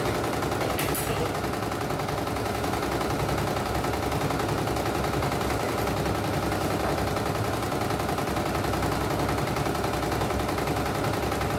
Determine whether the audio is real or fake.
real